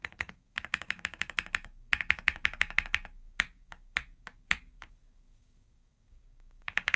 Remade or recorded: remade